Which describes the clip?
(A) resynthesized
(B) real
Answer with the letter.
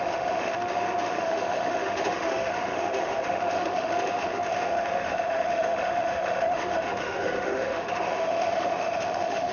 A